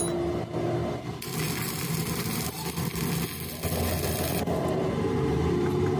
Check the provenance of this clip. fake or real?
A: real